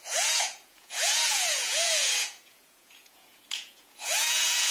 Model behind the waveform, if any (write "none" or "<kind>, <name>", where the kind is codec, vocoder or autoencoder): vocoder, Vocos